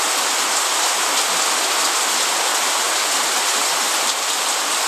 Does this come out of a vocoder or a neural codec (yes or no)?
no